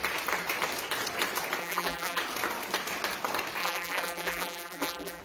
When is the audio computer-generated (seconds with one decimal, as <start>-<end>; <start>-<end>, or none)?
1.6-2.2; 3.6-5.2